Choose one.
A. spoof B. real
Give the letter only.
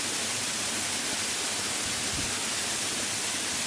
B